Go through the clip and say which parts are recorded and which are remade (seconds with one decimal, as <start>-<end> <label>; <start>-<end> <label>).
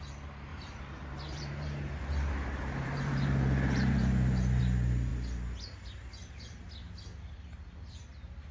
0.0-0.5 recorded; 0.5-4.6 remade; 4.6-8.5 recorded